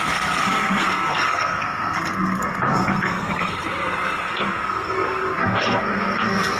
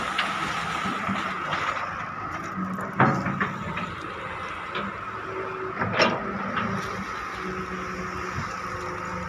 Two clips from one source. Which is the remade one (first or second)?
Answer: first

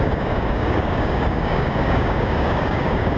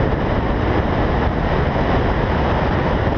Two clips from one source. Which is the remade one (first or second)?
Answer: first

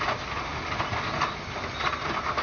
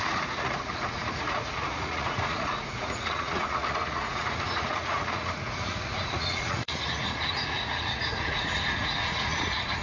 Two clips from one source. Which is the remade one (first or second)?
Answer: second